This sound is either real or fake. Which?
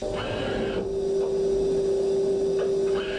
real